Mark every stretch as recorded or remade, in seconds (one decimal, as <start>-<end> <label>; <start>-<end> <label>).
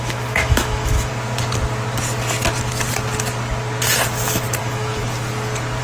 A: 0.0-1.1 remade; 1.1-4.6 recorded; 4.6-5.0 remade; 5.0-5.8 recorded